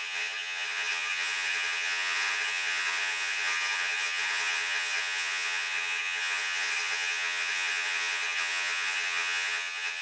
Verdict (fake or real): fake